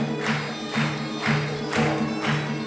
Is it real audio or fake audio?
real